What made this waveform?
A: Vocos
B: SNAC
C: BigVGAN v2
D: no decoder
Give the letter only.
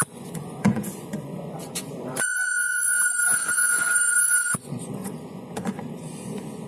A